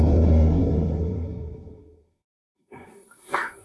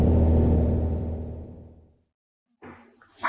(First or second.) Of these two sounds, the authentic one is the second